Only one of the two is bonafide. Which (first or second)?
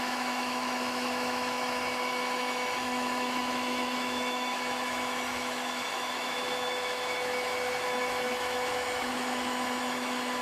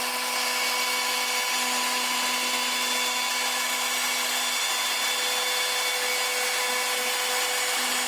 second